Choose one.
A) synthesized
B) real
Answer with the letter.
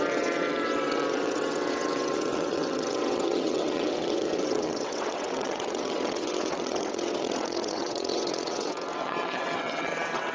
A